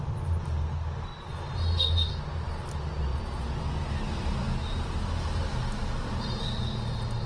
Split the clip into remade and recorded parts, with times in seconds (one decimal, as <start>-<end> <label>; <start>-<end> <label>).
0.0-7.3 recorded